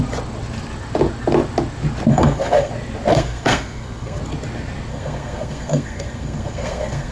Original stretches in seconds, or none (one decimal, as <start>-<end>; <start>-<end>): 0.0-2.1; 2.7-3.1; 4.2-4.9